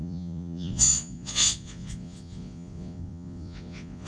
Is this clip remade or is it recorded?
remade